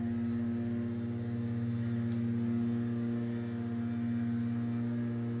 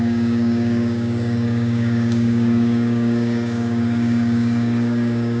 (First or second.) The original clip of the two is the first